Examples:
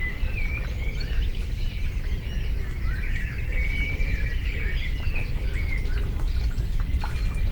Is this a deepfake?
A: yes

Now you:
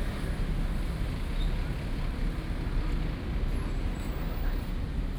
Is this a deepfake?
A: no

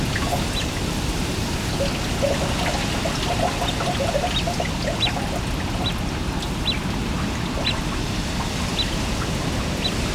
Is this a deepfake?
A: no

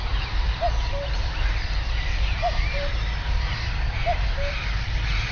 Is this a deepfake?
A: yes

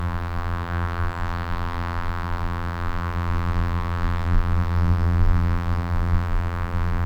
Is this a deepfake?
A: yes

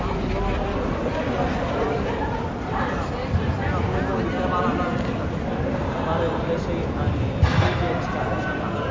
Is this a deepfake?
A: no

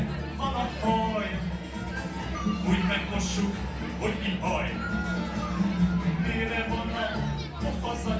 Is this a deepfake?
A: no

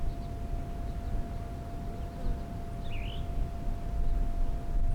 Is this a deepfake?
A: no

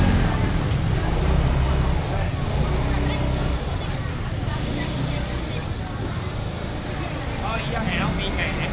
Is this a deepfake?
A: no